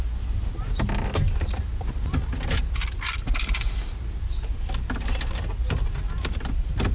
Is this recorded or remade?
recorded